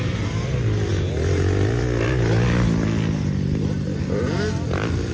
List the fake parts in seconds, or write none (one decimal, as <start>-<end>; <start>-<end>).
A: none